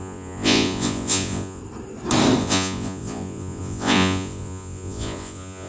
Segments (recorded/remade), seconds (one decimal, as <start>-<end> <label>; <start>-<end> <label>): 0.0-1.6 remade; 1.6-2.4 recorded; 2.4-5.7 remade